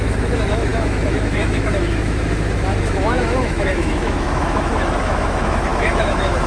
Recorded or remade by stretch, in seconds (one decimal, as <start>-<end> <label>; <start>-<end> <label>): 0.0-6.5 remade